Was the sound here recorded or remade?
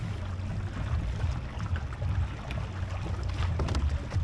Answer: recorded